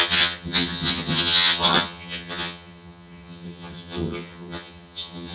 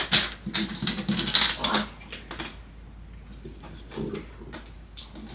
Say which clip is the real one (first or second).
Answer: second